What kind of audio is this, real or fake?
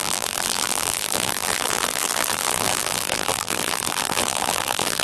fake